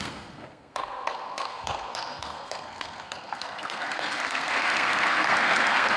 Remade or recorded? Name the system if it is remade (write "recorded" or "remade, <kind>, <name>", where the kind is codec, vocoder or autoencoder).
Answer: remade, codec, SNAC